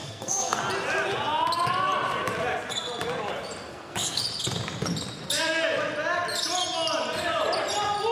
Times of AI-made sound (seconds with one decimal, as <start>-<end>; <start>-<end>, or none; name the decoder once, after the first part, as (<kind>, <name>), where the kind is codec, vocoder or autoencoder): 0.0-0.6 (codec, SNAC); 3.7-4.2